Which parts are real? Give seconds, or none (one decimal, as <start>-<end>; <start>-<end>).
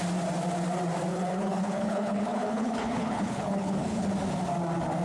0.0-1.1; 4.1-5.0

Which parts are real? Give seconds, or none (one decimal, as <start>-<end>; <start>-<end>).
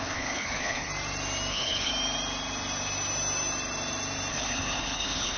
0.9-1.5; 1.9-4.3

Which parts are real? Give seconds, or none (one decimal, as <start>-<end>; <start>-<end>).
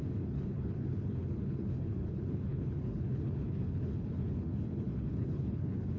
none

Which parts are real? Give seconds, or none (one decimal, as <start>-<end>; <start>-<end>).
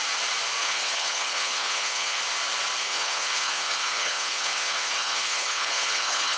0.0-0.6; 2.2-2.8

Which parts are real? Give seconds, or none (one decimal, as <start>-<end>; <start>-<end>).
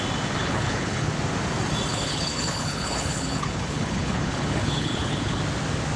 0.0-0.4; 1.1-1.9; 5.4-6.0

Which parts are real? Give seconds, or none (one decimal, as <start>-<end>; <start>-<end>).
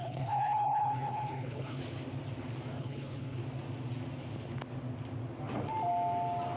1.8-2.8; 3.4-6.6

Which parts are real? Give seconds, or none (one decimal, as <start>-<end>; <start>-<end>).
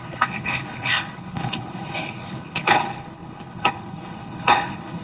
none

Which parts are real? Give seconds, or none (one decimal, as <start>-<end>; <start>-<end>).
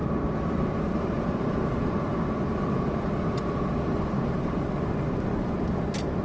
0.0-6.2